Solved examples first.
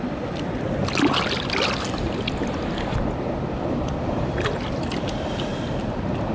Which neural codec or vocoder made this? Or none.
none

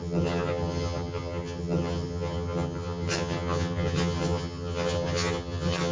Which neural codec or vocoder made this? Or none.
vocoder, HiFi-GAN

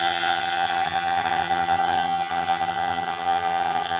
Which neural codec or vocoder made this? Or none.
vocoder, HiFi-GAN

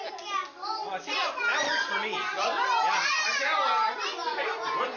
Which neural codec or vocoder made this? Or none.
none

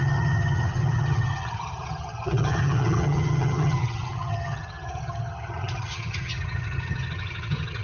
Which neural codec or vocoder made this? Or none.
vocoder, HiFi-GAN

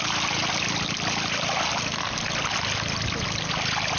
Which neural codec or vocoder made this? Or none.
none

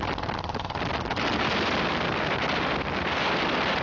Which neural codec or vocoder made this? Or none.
none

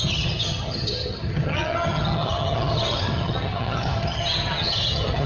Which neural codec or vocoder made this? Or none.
vocoder, HiFi-GAN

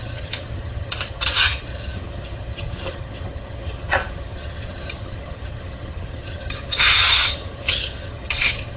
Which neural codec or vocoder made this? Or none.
vocoder, HiFi-GAN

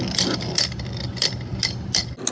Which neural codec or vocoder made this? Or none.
none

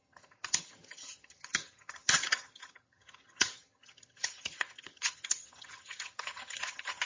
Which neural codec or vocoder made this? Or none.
vocoder, HiFi-GAN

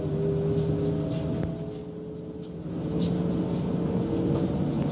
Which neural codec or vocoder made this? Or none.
none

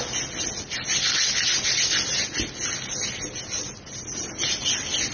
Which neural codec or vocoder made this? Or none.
none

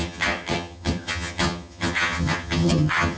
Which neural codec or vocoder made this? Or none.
vocoder, HiFi-GAN